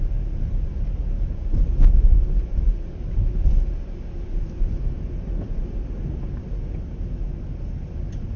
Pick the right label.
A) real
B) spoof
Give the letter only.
A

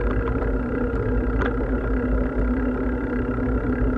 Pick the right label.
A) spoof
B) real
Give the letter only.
B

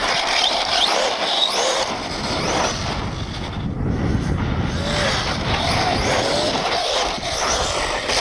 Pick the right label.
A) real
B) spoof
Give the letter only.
A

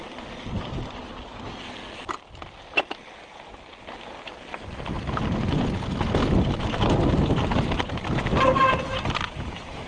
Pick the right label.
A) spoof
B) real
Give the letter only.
B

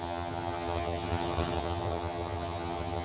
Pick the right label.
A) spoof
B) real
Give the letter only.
A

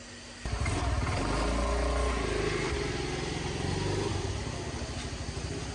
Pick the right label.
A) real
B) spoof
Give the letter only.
A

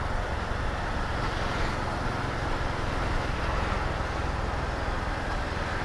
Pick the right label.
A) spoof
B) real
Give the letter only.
B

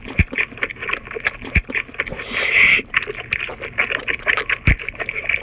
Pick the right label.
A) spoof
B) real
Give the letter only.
B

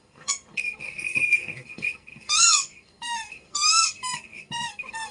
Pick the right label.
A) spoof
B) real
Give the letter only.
A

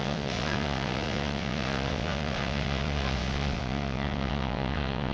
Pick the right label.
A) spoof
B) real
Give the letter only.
A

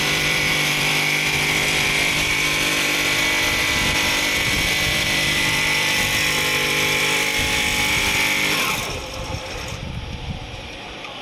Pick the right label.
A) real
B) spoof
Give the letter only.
B